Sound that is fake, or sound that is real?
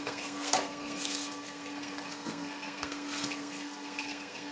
fake